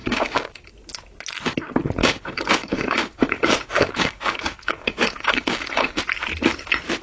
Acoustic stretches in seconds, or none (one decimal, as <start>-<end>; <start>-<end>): 0.7-2.0; 6.0-7.0